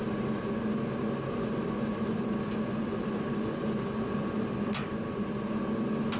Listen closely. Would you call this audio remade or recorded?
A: recorded